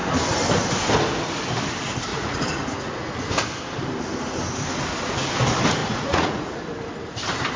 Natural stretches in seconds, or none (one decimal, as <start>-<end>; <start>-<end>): 0.0-2.1; 3.3-5.8; 6.6-7.6